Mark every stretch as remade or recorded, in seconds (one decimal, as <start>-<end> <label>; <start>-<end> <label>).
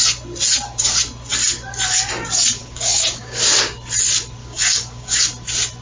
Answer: 0.0-2.6 recorded; 2.6-3.4 remade; 3.4-4.4 recorded; 4.4-5.2 remade; 5.2-5.8 recorded